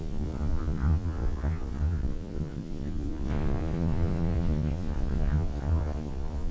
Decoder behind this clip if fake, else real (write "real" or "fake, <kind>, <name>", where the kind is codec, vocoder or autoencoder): fake, vocoder, Vocos